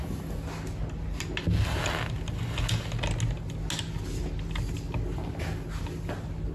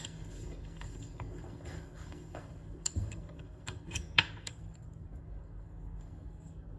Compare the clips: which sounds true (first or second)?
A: first